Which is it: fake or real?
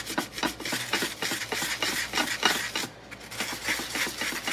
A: real